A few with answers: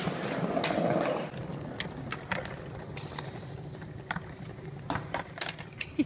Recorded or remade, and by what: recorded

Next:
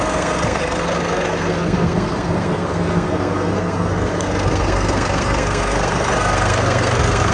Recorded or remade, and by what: remade, codec, SNAC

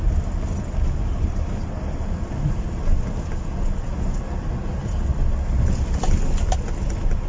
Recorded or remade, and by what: recorded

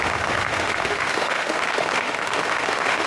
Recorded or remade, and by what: remade, autoencoder, DAC-VAE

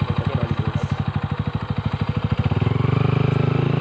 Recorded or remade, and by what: recorded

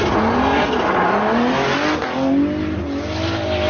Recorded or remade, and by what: recorded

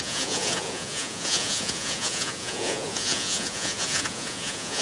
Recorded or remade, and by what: remade, vocoder, Vocos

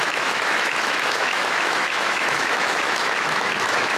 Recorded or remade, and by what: remade, autoencoder, DAC-VAE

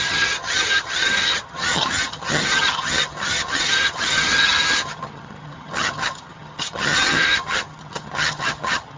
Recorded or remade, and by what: remade, vocoder, HiFi-GAN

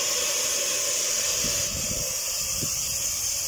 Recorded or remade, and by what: remade, vocoder, BigVGAN v2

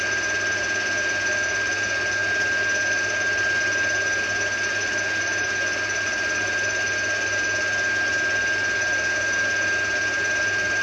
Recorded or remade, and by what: recorded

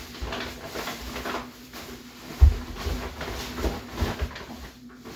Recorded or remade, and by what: recorded